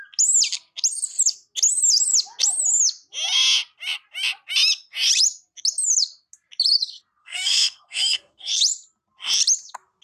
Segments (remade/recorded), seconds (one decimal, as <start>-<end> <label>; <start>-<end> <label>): 0.0-7.2 recorded; 7.2-8.6 remade; 8.6-10.0 recorded